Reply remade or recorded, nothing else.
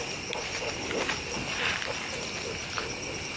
recorded